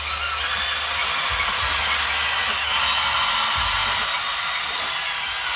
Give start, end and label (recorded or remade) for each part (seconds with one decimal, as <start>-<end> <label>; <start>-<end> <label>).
0.0-5.6 recorded